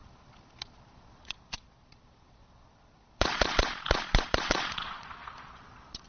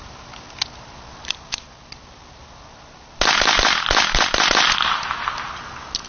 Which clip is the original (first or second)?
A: second